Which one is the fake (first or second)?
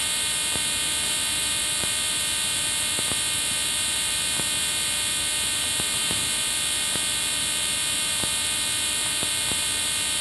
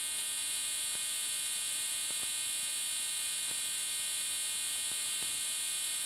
first